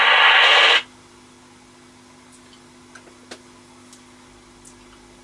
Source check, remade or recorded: recorded